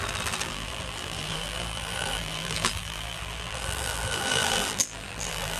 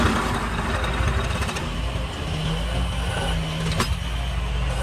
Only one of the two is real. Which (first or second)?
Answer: second